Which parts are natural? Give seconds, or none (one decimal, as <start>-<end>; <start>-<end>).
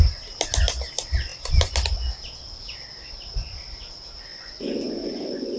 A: 0.0-4.3